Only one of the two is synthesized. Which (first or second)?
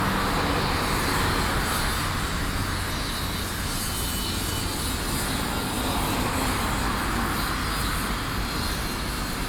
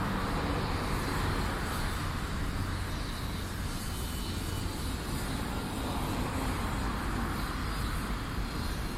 second